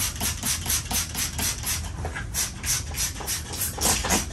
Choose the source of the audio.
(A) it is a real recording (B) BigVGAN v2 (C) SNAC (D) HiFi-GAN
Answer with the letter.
A